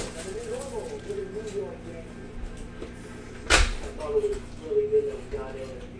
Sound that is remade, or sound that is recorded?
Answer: recorded